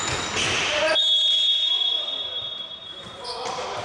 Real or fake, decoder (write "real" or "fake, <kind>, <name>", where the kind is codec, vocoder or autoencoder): real